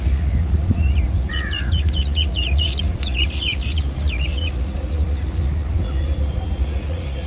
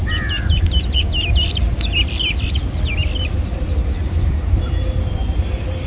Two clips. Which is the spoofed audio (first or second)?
first